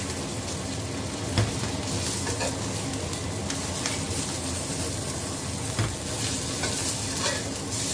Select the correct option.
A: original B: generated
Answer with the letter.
A